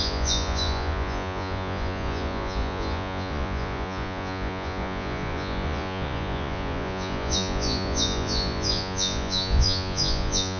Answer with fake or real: fake